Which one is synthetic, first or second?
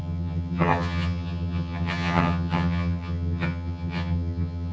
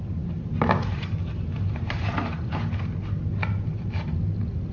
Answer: first